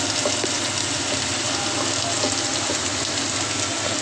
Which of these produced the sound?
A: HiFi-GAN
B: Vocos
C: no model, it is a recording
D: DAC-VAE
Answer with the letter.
C